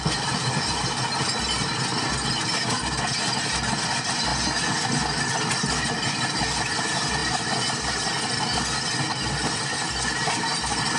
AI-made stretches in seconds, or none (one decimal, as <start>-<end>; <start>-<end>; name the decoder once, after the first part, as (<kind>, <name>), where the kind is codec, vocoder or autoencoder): none